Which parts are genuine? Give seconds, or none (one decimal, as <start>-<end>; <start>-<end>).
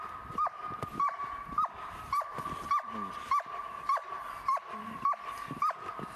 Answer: 0.0-6.2